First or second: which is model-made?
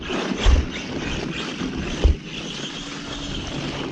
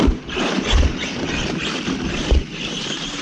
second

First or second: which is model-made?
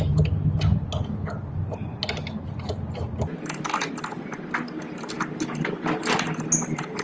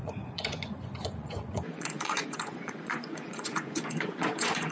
second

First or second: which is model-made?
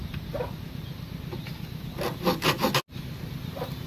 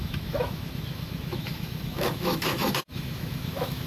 second